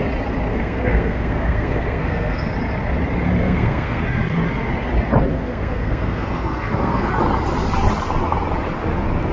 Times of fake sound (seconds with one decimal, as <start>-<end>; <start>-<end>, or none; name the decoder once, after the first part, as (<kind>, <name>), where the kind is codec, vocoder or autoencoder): 0.5-2.5 (codec, SNAC); 3.4-4.0; 5.3-7.1